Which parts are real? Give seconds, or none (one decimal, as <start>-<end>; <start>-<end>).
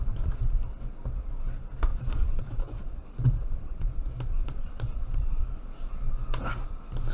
0.0-1.9; 4.0-4.4; 5.4-7.1